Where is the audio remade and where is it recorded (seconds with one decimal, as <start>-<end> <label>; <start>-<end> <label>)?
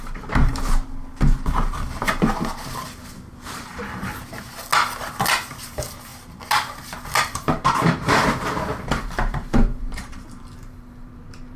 0.0-0.5 remade; 0.5-3.6 recorded; 3.6-4.5 remade; 4.5-5.5 recorded; 5.5-6.1 remade; 6.1-7.2 recorded; 7.2-8.2 remade; 8.2-9.0 recorded; 9.0-11.6 remade